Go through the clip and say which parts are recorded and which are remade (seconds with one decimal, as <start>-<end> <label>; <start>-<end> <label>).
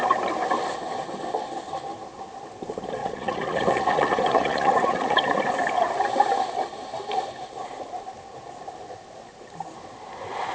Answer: 0.0-3.0 recorded; 3.0-5.4 remade; 5.4-10.5 recorded